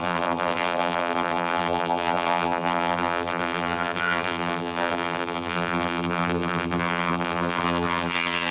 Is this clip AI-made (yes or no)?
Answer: yes